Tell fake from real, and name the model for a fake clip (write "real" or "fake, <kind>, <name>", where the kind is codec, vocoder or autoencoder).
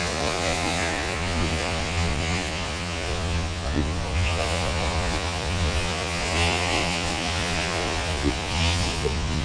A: fake, vocoder, Vocos